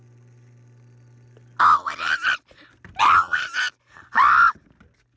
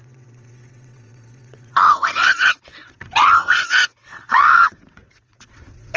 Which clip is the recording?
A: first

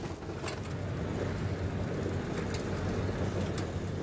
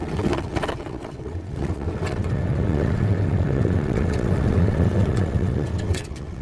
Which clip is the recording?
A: first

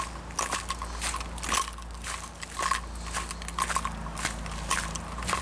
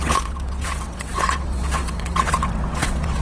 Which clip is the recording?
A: first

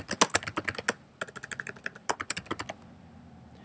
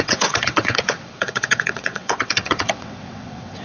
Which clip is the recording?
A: first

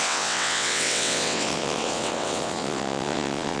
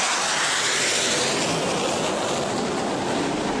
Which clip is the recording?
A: second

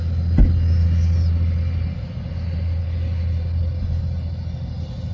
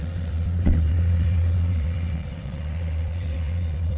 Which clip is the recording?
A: first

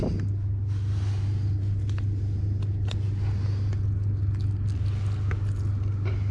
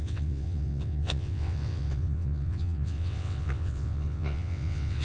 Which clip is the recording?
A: first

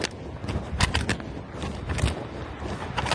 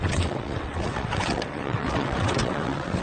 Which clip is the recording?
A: first